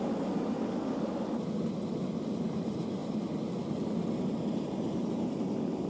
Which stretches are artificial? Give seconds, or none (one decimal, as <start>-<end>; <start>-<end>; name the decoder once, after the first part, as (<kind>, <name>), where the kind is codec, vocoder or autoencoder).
none

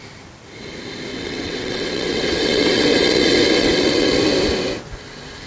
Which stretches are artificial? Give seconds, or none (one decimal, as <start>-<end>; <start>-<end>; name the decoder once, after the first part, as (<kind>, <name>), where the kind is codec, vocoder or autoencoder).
1.1-4.2 (vocoder, WaveNeXt)

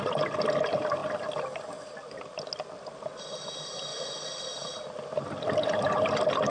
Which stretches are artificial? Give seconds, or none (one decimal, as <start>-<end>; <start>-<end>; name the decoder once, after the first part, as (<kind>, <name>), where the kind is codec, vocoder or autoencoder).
none

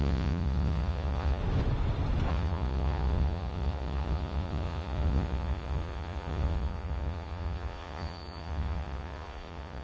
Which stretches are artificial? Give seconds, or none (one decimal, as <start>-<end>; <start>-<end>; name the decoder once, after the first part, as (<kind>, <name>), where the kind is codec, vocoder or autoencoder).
0.0-1.4 (vocoder, Vocos); 2.3-9.8